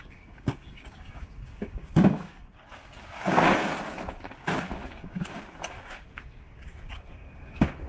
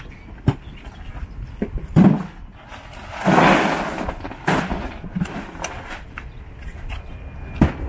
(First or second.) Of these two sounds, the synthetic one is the first